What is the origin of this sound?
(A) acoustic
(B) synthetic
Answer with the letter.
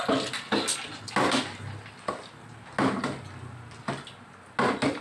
A